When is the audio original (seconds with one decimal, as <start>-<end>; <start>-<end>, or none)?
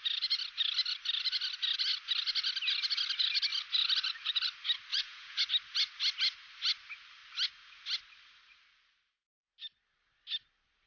0.0-4.9; 5.4-10.9